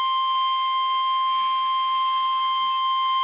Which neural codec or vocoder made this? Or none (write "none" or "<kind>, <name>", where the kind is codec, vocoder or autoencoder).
codec, SNAC